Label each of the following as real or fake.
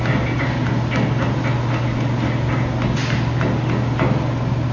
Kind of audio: real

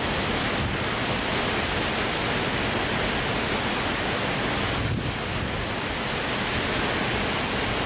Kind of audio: real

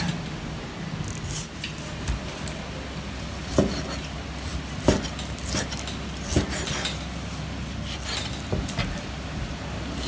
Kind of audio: real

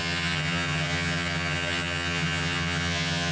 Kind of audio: fake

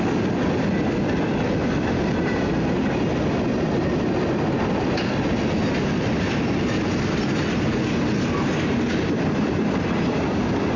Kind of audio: real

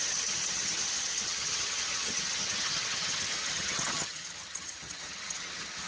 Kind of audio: fake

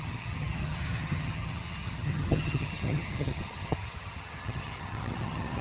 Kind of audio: fake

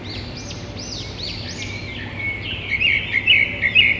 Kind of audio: real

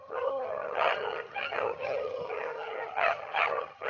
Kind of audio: fake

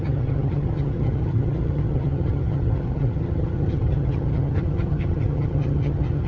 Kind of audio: fake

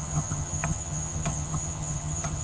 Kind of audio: fake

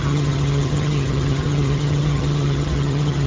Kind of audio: fake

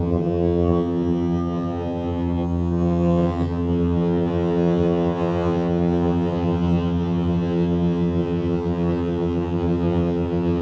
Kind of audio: fake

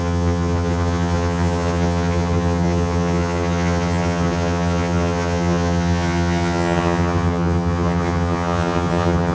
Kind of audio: fake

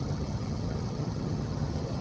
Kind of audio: fake